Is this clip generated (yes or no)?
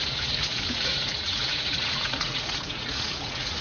yes